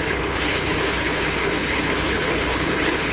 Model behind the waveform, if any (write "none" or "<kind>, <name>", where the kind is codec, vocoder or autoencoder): codec, HILCodec